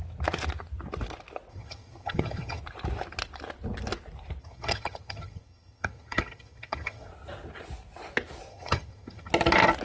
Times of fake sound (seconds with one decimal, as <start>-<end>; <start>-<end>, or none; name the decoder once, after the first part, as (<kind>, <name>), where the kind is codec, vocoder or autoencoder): 1.5-2.6 (vocoder, HiFi-GAN); 4.4-7.1; 8.5-9.3